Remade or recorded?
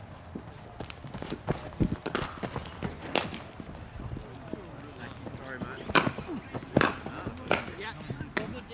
recorded